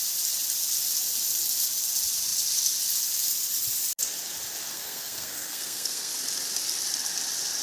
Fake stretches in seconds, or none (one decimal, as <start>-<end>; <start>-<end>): 4.7-6.1